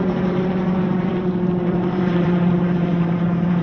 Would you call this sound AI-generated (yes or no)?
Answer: yes